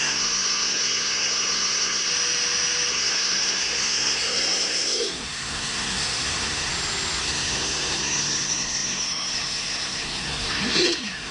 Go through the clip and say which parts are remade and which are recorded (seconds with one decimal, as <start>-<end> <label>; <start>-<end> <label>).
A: 0.0-2.1 remade; 2.1-2.9 recorded; 2.9-6.7 remade; 6.7-7.2 recorded; 7.2-11.3 remade